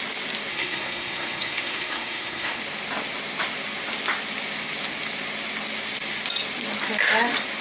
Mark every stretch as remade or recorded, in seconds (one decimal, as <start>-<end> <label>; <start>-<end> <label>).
0.0-0.5 recorded; 0.5-2.6 remade; 2.6-7.6 recorded